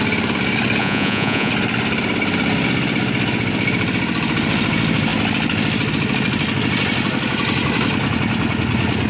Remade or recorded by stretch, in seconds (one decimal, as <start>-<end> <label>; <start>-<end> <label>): 0.0-0.8 recorded; 0.8-1.5 remade; 1.5-9.1 recorded